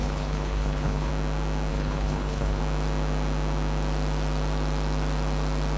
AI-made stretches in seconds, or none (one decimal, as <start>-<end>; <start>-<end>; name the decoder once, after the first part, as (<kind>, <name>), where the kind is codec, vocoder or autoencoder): 0.0-1.1 (codec, HILCodec); 1.7-2.6